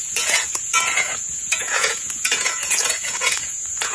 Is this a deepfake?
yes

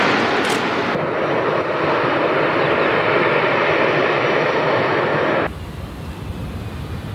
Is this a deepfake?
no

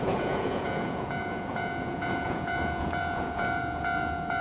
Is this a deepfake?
yes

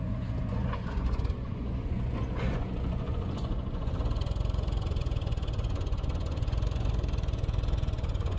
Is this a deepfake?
yes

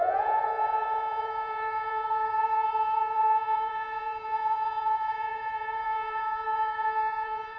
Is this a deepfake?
yes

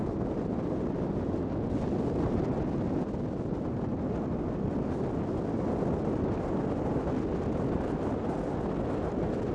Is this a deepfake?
no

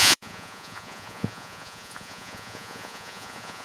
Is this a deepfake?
yes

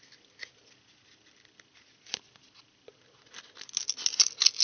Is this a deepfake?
no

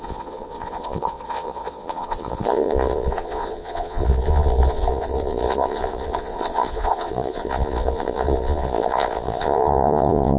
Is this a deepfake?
yes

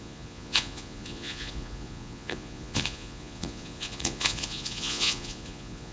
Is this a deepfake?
yes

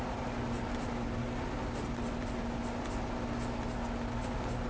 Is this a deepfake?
no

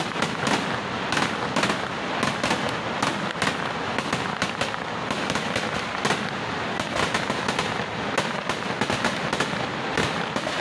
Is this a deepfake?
no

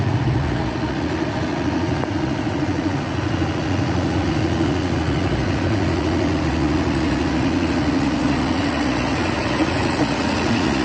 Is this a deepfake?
yes